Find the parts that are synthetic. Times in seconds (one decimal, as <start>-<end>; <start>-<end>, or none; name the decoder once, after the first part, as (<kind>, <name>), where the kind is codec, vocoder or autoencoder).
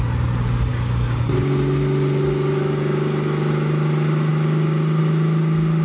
0.7-1.3 (codec, DAC)